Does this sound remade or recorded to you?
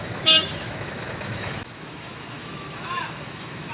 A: remade